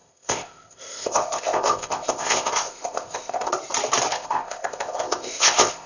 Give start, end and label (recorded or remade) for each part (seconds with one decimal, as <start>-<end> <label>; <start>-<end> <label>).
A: 0.0-3.5 remade; 3.5-4.1 recorded; 4.1-5.9 remade